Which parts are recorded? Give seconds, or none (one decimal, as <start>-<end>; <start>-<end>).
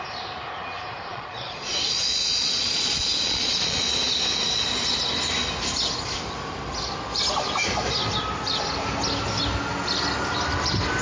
0.0-1.1; 3.8-11.0